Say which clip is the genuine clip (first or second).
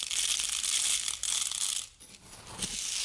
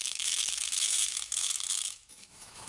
first